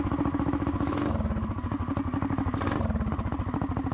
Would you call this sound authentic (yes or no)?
yes